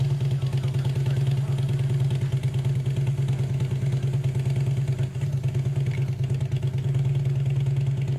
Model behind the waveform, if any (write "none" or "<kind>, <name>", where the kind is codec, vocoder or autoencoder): none